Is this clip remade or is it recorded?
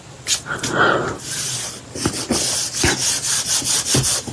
recorded